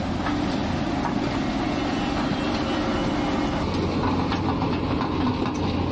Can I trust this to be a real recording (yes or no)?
yes